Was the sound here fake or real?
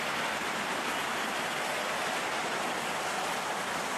real